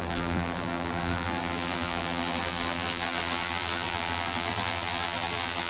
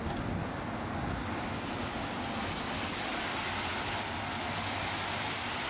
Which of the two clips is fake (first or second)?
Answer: first